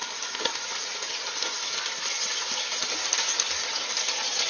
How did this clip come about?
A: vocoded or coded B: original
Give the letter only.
B